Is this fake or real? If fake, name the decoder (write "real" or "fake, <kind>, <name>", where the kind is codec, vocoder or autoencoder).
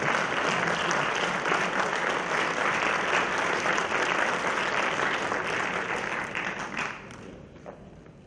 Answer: real